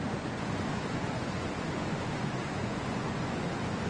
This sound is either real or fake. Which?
fake